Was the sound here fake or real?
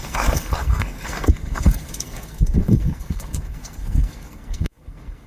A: fake